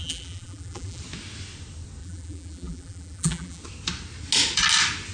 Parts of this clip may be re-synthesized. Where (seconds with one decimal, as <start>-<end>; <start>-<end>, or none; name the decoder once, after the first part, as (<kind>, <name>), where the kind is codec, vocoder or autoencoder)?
0.0-1.0 (vocoder, BigVGAN v2); 2.0-3.6